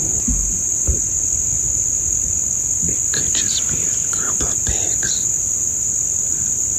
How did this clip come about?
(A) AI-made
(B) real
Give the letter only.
B